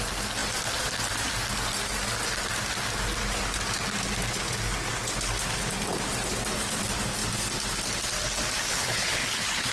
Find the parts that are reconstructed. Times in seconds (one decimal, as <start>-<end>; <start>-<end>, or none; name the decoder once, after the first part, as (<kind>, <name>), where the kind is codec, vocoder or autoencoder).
8.7-9.7 (codec, HILCodec)